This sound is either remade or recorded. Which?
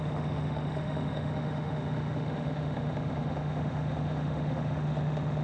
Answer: remade